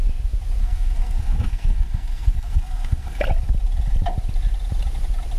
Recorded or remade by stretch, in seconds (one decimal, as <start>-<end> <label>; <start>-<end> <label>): 0.0-0.6 recorded; 0.6-3.2 remade; 3.2-5.4 recorded